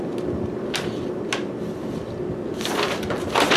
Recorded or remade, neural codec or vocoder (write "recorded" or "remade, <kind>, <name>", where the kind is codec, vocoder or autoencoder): recorded